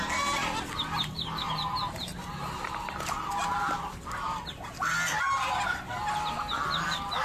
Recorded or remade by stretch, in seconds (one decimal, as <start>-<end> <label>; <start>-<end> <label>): 0.0-7.2 recorded

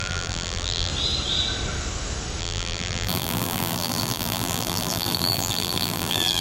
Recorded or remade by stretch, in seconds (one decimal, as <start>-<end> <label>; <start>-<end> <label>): 0.0-0.9 remade; 0.9-2.4 recorded; 2.4-6.4 remade